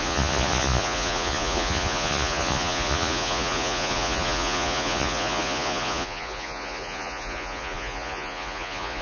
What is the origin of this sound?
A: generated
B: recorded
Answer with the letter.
A